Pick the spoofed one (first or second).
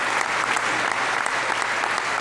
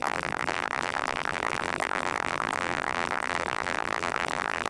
second